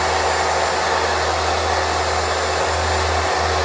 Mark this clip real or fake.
real